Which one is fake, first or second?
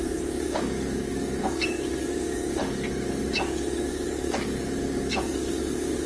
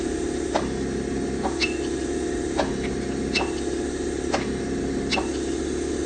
first